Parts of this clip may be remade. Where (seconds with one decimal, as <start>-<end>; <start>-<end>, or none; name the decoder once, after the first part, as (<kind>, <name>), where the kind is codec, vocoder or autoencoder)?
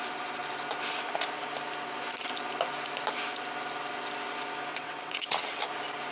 4.7-5.6 (vocoder, WaveNeXt)